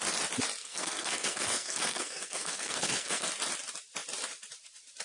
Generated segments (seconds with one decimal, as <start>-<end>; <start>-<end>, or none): 0.6-3.3